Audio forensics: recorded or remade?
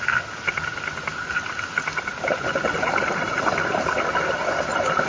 recorded